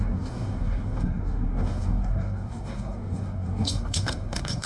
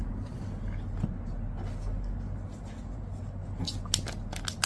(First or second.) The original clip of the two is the second